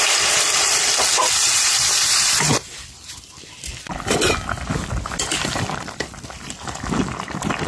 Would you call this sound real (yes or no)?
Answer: no